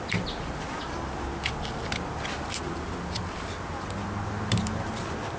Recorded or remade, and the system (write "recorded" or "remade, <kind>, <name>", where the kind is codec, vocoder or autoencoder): recorded